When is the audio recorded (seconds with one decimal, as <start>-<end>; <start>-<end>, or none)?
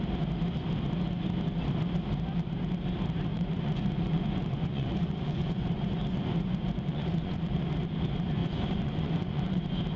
0.0-3.3; 7.6-8.4; 9.6-10.0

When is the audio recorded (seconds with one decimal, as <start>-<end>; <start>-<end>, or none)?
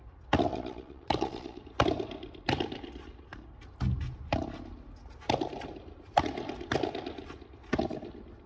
0.0-0.5; 1.6-8.5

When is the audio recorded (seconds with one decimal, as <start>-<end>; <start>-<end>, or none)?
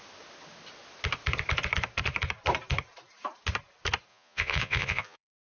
0.0-4.1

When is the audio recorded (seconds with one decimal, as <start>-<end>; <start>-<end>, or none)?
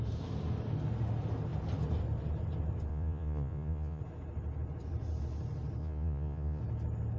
0.0-2.9; 4.0-5.8; 6.6-7.2